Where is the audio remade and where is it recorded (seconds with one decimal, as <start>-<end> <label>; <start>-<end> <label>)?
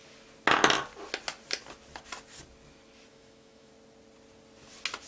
0.0-3.1 recorded; 3.1-3.7 remade; 3.7-5.1 recorded